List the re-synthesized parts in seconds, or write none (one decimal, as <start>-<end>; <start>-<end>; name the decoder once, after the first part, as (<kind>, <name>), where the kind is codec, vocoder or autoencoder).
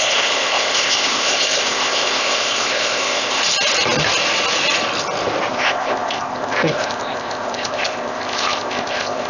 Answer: 0.0-3.4 (codec, ZipCodec); 5.5-9.3